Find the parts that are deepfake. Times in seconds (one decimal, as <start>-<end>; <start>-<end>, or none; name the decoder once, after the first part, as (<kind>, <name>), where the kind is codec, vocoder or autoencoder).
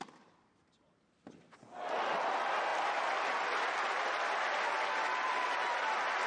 none